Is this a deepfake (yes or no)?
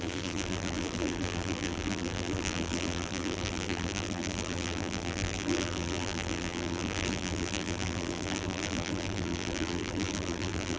yes